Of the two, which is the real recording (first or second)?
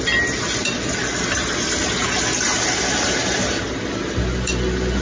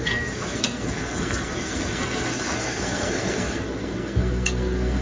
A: first